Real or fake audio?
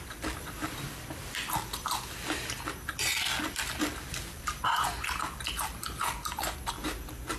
real